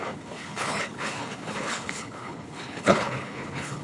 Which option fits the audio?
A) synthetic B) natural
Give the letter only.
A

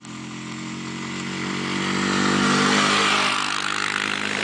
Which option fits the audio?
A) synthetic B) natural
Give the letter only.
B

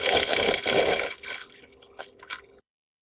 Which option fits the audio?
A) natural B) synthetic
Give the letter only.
B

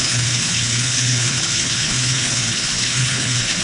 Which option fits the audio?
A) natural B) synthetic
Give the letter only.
B